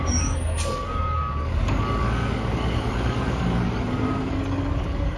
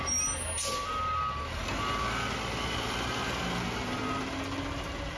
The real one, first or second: second